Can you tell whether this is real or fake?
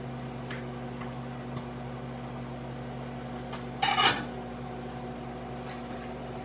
real